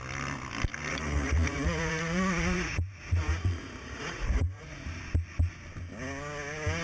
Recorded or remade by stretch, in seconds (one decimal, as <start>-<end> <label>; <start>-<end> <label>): 0.0-0.9 recorded; 0.9-5.0 remade; 5.0-6.8 recorded